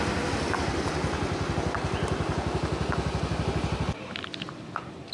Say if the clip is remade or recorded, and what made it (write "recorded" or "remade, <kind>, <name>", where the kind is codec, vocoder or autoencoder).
recorded